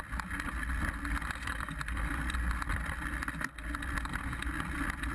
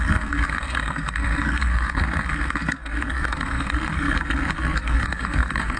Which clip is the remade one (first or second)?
second